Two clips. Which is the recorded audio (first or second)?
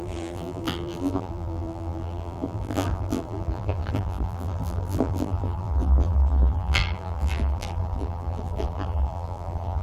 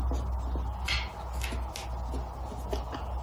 second